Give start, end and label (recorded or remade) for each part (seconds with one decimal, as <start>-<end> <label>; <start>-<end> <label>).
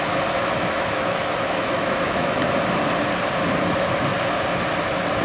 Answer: 0.0-0.4 recorded; 0.4-2.5 remade; 2.5-5.2 recorded